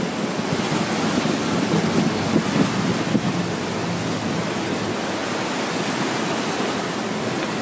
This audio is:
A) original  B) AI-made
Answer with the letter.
A